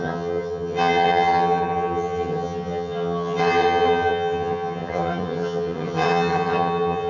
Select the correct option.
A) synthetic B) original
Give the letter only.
A